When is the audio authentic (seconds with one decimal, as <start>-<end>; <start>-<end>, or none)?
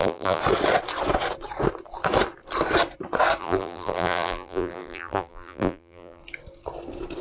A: 0.4-3.4; 6.2-7.2